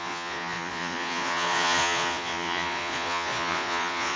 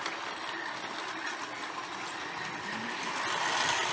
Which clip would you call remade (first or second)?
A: first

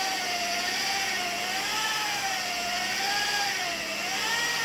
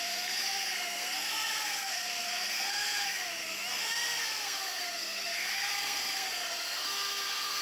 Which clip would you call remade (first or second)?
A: second